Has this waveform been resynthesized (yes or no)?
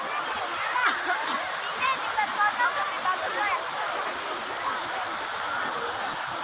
no